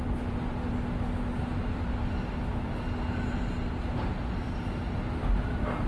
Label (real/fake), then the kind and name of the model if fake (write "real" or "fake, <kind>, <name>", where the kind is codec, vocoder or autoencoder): real